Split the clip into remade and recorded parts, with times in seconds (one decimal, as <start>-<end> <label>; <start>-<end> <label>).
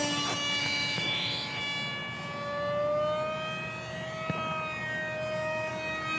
0.0-0.6 recorded; 0.6-1.6 remade; 1.6-6.2 recorded